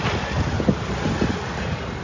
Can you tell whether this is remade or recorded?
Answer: recorded